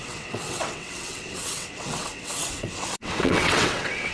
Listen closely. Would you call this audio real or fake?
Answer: fake